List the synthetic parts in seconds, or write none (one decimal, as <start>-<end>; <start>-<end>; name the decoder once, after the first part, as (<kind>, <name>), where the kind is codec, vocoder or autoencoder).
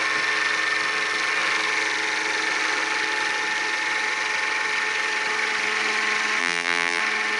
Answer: 6.4-7.0 (vocoder, BigVGAN v2)